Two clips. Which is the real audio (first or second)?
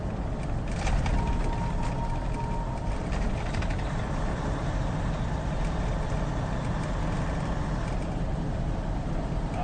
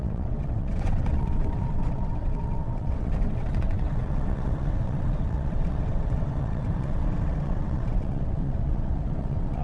first